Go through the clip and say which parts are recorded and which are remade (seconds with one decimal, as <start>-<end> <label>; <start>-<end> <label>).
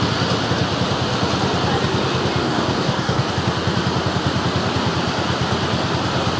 0.0-2.4 recorded; 2.4-3.3 remade; 3.3-6.4 recorded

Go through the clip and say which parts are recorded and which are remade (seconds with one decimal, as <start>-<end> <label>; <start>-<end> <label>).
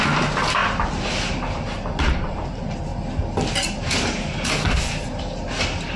0.0-6.0 recorded